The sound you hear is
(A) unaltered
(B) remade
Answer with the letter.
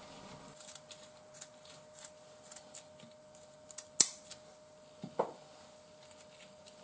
A